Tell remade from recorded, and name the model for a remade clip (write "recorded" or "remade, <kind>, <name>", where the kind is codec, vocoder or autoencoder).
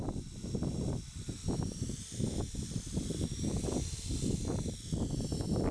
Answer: recorded